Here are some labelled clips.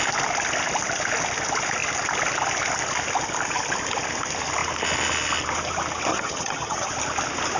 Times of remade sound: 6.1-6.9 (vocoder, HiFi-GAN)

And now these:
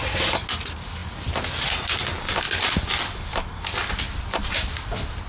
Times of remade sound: none

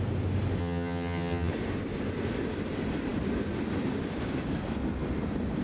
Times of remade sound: 0.6-1.5 (vocoder, HiFi-GAN)

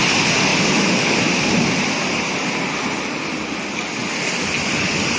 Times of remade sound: none

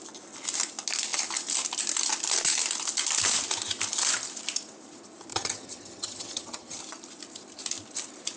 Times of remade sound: 5.3-6.8 (vocoder, HiFi-GAN)

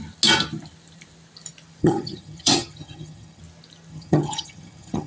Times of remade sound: 1.8-3.4 (vocoder, HiFi-GAN); 3.9-5.1

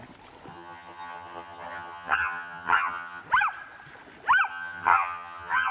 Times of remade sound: 0.5-3.2 (vocoder, HiFi-GAN); 4.5-5.7